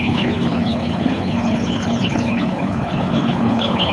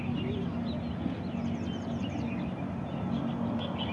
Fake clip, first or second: first